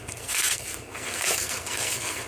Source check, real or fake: fake